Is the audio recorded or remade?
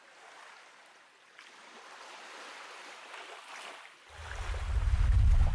remade